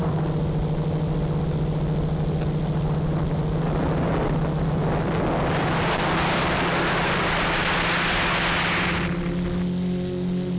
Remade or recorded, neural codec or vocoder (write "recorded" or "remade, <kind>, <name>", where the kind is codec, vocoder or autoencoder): recorded